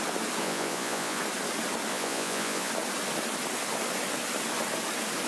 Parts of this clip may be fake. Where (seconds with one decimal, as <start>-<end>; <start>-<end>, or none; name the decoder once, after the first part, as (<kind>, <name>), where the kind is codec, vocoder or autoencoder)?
0.4-1.2 (vocoder, Vocos); 1.9-2.7